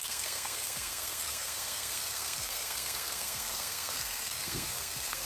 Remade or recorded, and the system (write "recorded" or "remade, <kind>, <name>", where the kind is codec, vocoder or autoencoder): remade, codec, SNAC